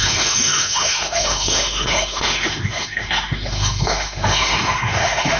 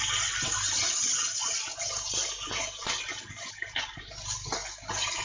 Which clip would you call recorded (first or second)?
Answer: second